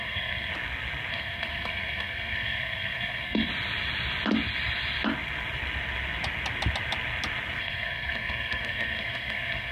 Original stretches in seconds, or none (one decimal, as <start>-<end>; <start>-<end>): 0.5-1.1; 3.5-7.6